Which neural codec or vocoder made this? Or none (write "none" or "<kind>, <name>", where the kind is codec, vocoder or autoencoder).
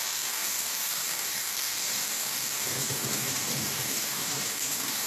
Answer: codec, DAC